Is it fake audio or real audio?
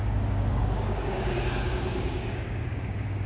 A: fake